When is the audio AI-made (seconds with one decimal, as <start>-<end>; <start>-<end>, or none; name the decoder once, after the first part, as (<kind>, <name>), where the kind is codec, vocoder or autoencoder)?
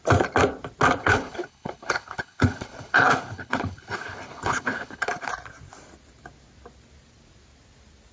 1.0-5.3 (codec, HILCodec)